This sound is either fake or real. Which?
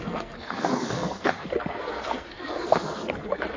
fake